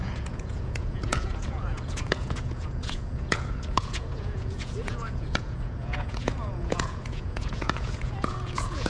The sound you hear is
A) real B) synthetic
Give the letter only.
B